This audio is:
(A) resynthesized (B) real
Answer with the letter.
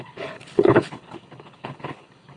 A